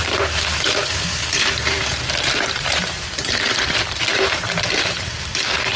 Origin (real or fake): fake